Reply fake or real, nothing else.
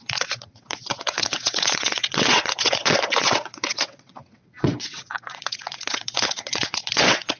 fake